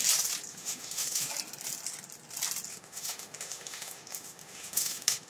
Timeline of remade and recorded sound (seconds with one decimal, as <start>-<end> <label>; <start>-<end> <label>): 0.0-0.5 recorded; 0.5-1.3 remade; 1.3-2.7 recorded; 2.7-5.3 remade